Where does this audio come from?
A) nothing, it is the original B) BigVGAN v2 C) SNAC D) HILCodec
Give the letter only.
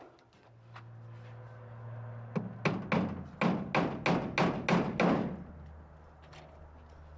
A